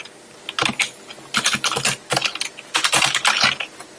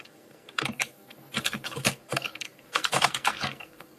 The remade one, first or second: second